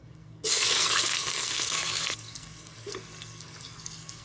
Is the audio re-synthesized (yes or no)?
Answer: yes